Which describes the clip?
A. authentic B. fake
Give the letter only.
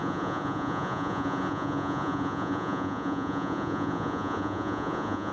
B